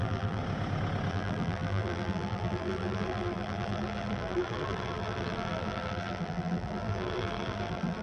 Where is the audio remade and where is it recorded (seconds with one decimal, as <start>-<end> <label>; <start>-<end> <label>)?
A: 0.0-0.4 remade; 0.4-1.1 recorded; 1.1-8.0 remade